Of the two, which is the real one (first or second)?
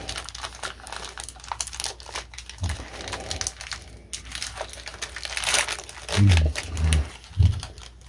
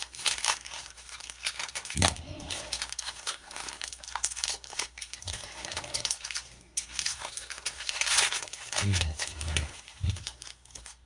first